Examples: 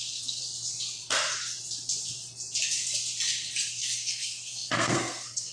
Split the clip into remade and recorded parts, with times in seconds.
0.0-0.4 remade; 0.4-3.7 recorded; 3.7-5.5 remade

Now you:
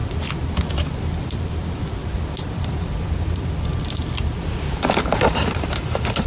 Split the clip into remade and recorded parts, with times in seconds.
0.0-6.3 remade

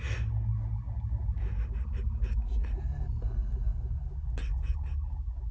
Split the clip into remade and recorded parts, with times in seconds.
0.0-5.5 recorded

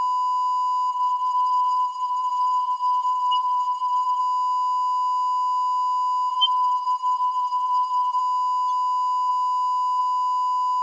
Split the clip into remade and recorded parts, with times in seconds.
0.0-0.9 recorded; 0.9-4.2 remade; 4.2-6.3 recorded; 6.3-8.2 remade; 8.2-10.8 recorded

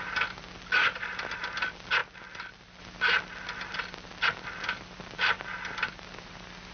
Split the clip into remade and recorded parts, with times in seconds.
0.0-6.7 recorded

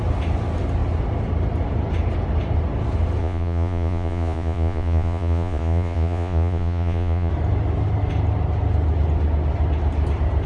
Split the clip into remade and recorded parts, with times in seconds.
0.0-3.2 recorded; 3.2-7.3 remade; 7.3-10.5 recorded

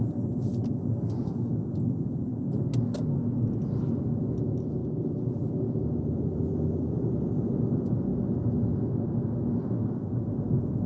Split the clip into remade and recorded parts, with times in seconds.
0.0-2.3 remade; 2.3-3.7 recorded; 3.7-4.8 remade; 4.8-6.0 recorded; 6.0-8.1 remade; 8.1-9.2 recorded; 9.2-10.9 remade

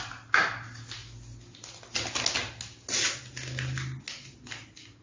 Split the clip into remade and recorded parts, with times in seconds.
0.0-5.0 recorded